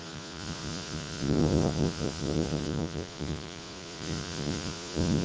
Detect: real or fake fake